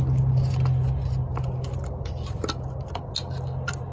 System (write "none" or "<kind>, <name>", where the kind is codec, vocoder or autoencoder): none